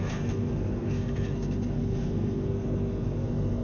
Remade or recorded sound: remade